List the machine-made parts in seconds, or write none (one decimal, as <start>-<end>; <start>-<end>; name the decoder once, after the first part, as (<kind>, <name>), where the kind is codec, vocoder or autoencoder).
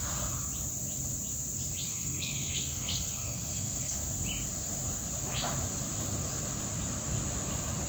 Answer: 1.9-4.0 (codec, SNAC)